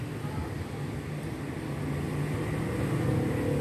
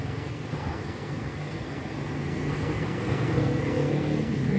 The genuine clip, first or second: first